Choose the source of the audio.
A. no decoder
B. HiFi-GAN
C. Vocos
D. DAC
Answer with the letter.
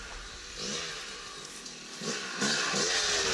A